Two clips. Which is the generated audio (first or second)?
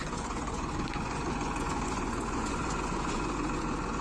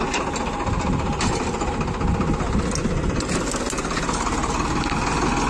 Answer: first